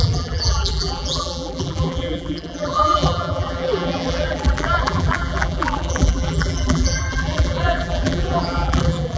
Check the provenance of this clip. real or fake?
fake